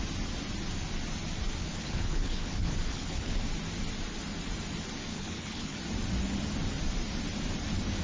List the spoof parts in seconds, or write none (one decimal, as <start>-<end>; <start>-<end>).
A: 1.6-3.4; 5.1-5.8